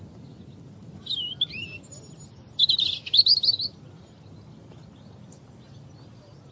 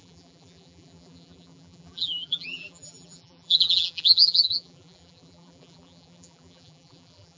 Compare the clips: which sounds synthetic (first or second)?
second